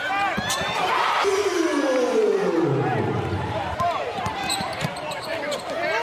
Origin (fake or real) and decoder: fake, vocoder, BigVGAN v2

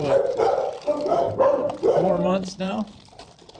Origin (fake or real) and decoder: fake, vocoder, BigVGAN v2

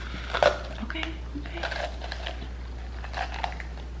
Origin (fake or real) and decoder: real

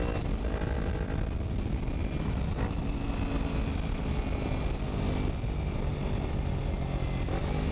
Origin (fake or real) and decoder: real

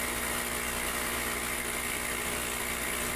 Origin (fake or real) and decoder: real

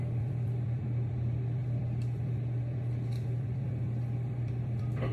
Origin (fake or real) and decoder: fake, vocoder, BigVGAN v2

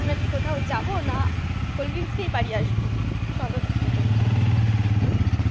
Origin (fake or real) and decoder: real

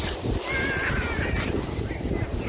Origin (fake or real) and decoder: real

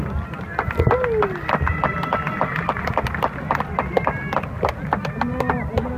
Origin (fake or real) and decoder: real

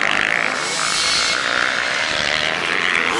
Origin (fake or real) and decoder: real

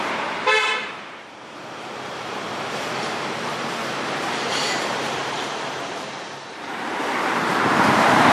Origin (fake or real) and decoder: fake, vocoder, BigVGAN v2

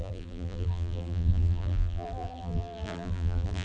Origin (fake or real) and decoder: fake, vocoder, BigVGAN v2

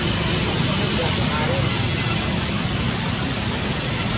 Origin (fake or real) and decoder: fake, vocoder, BigVGAN v2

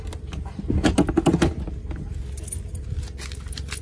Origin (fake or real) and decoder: real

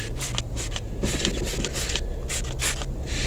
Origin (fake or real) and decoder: real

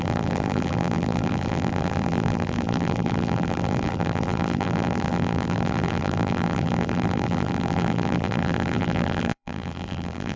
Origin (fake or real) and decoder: fake, vocoder, BigVGAN v2